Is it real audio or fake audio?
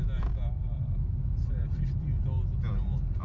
real